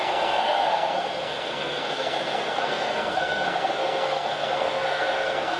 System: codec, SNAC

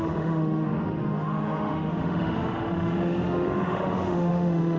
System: autoencoder, DAC-VAE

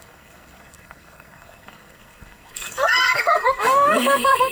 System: codec, SNAC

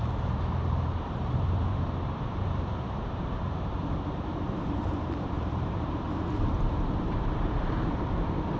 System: vocoder, BigVGAN v2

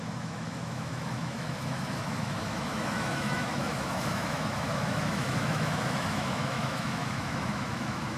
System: autoencoder, DAC-VAE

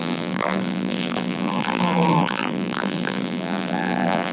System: vocoder, BigVGAN v2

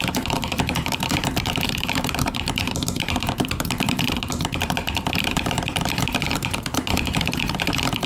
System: vocoder, BigVGAN v2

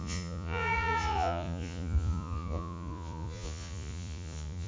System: vocoder, Vocos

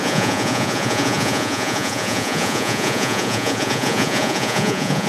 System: vocoder, Vocos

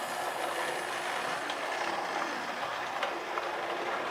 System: none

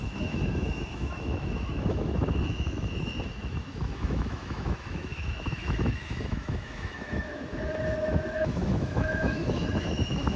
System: autoencoder, DAC-VAE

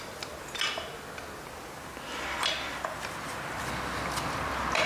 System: none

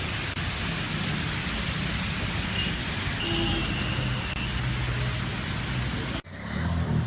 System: none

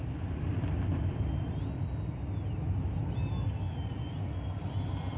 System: none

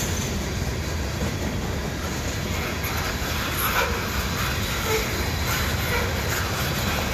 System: none